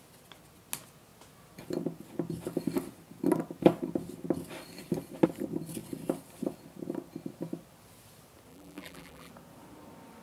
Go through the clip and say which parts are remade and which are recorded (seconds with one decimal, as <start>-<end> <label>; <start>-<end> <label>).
0.0-8.5 recorded; 8.5-9.3 remade; 9.3-10.2 recorded